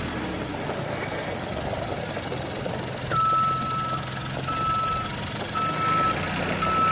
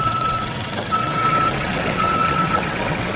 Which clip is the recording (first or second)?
first